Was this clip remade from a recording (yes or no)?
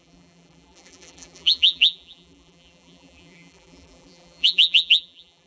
yes